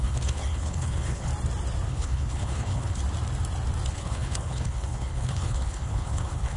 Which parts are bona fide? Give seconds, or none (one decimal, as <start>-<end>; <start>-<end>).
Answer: 1.3-1.9; 3.0-3.9